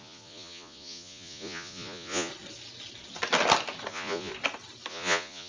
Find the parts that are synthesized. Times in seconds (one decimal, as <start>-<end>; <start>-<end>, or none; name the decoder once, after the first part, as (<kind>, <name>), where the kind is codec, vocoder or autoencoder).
0.0-2.3 (vocoder, Vocos); 3.9-4.3; 4.9-5.5